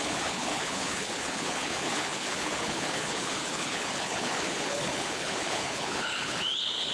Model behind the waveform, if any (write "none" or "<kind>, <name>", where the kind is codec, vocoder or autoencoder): codec, HILCodec